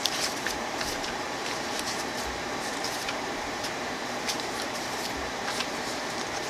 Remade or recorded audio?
remade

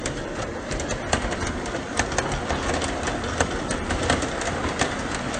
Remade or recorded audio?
remade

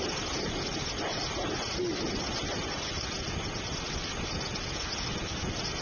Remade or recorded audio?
recorded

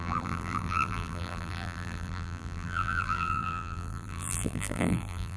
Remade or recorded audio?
remade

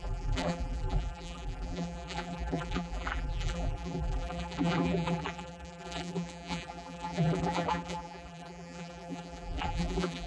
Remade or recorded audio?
remade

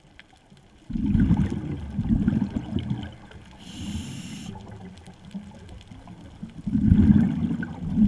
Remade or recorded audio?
recorded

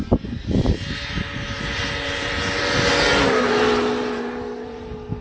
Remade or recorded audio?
remade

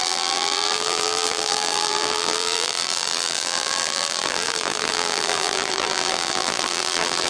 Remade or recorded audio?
remade